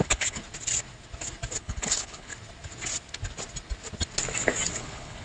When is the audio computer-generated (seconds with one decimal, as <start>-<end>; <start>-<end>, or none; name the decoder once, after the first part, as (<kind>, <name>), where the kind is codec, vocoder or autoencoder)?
0.0-0.4 (codec, HILCodec); 1.6-2.3; 4.7-5.2